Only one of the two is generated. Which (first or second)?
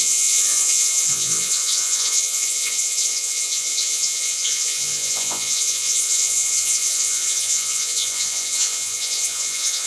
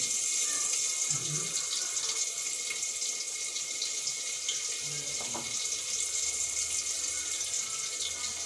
first